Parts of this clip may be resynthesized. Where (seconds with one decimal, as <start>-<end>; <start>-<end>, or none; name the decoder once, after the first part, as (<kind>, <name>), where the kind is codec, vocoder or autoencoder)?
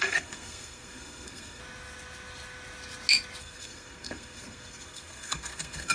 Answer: 0.0-1.6 (codec, SNAC); 3.4-5.9